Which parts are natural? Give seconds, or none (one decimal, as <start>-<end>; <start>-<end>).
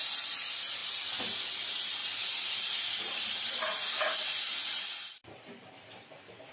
0.0-2.0; 5.3-6.5